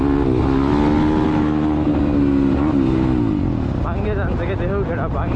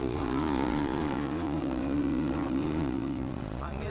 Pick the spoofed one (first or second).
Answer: second